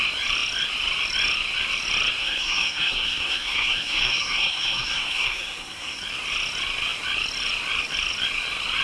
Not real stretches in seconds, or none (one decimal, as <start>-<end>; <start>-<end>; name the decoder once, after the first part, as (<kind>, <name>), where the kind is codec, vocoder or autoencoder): 2.2-6.0 (codec, SNAC)